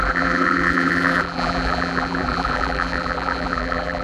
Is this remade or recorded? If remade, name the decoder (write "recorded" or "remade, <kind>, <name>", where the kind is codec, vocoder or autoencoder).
remade, vocoder, BigVGAN v2